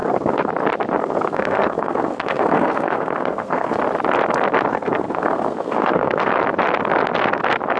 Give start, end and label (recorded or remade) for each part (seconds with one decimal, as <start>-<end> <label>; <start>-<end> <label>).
0.0-0.5 remade; 0.5-1.0 recorded; 1.0-3.8 remade; 3.8-4.7 recorded; 4.7-6.3 remade; 6.3-7.8 recorded